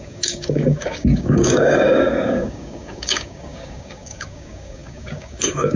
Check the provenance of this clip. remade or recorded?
remade